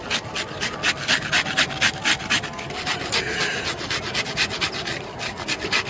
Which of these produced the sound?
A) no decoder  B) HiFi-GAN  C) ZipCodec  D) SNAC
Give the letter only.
A